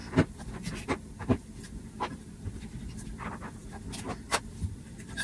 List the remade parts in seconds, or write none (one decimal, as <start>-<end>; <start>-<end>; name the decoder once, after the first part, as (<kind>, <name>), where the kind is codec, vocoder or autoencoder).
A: 0.0-5.2 (vocoder, BigVGAN v2)